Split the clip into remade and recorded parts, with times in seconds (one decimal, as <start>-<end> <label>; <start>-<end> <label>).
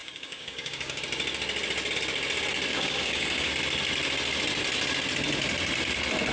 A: 0.0-1.0 remade; 1.0-2.7 recorded; 2.7-3.5 remade; 3.5-6.3 recorded